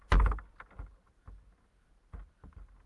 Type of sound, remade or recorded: recorded